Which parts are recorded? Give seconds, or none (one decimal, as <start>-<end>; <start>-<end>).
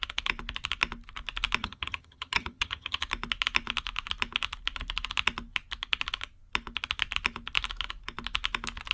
0.0-1.6; 3.0-8.9